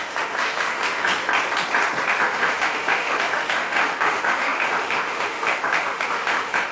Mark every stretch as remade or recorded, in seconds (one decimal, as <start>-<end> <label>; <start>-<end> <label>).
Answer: 0.0-1.1 remade; 1.1-2.2 recorded; 2.2-6.7 remade